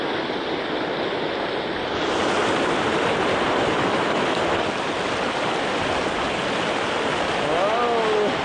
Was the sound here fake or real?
real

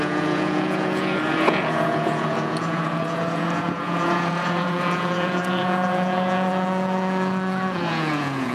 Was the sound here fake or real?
fake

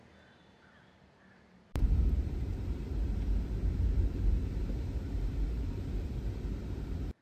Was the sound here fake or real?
fake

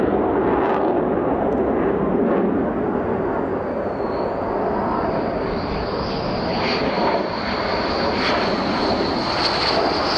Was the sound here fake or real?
real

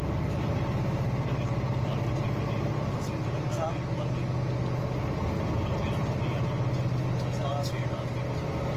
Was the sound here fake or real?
real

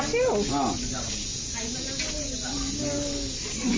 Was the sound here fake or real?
real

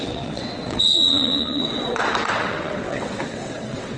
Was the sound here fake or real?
fake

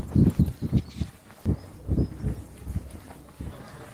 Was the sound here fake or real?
real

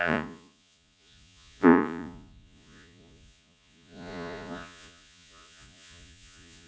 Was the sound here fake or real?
fake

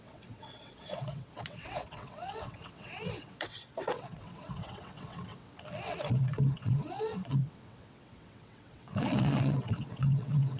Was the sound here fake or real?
fake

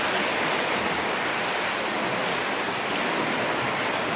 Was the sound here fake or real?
real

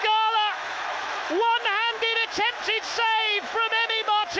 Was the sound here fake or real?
fake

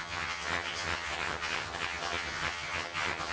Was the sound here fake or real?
fake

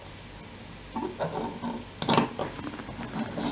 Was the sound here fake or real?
real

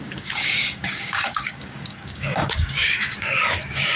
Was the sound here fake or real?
fake